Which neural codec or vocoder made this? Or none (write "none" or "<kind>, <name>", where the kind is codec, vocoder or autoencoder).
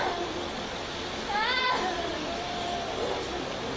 none